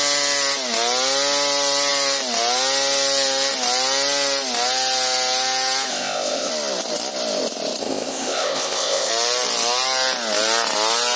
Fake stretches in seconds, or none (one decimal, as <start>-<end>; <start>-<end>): 5.9-6.5; 7.8-9.1